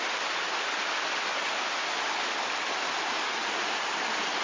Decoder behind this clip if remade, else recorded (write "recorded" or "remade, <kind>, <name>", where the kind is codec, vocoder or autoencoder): recorded